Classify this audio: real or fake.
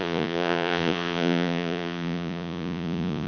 fake